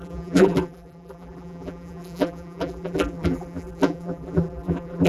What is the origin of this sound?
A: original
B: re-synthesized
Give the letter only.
B